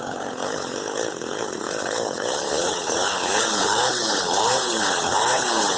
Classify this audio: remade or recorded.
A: remade